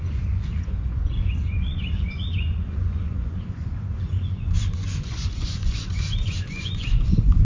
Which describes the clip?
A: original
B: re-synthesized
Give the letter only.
B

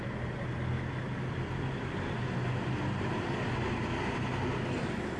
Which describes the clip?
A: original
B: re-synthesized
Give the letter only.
A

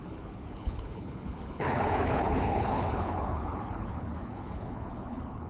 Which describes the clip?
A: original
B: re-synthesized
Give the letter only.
B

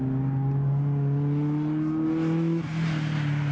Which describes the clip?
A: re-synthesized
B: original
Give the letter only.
B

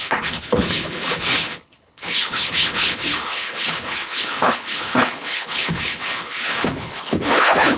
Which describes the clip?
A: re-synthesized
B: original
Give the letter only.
A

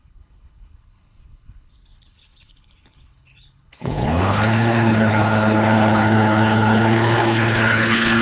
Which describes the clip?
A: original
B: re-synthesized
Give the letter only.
B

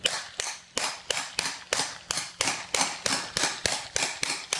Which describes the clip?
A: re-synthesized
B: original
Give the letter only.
B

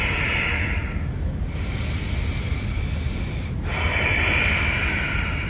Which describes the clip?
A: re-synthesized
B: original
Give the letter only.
B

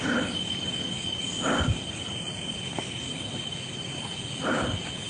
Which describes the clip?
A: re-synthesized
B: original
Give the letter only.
B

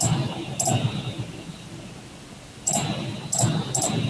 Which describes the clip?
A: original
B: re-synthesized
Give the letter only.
A